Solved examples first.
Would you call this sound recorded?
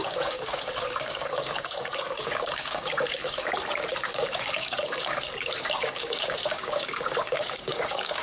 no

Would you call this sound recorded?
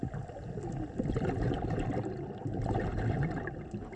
yes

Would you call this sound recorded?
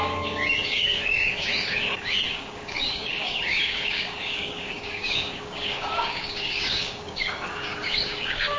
no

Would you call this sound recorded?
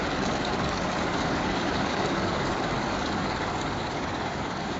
no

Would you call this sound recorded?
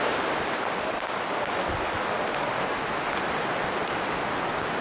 yes